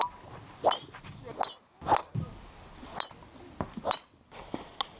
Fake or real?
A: real